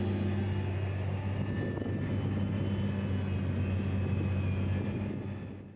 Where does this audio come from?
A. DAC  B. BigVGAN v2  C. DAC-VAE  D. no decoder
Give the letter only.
D